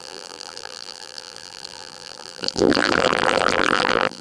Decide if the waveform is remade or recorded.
remade